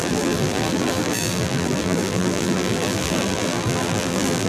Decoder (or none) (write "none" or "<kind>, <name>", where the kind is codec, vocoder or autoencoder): vocoder, BigVGAN v2